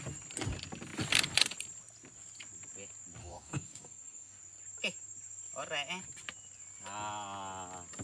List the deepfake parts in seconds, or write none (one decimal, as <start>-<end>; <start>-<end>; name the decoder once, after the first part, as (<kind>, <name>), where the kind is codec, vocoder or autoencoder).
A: 3.2-4.4 (codec, DAC)